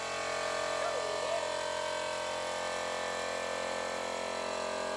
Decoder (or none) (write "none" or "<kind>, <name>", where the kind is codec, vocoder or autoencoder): none